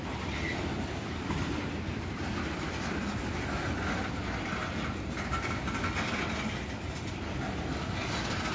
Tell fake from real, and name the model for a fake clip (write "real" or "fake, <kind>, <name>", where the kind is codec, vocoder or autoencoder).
real